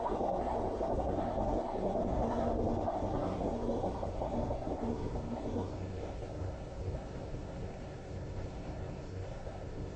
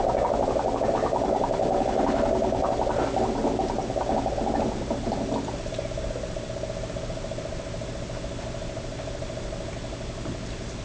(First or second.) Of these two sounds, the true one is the second